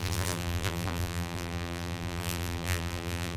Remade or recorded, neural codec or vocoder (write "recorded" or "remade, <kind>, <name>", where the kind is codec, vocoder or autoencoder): remade, vocoder, BigVGAN v2